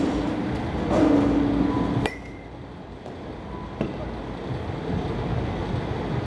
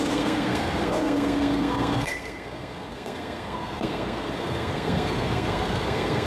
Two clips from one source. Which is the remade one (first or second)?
second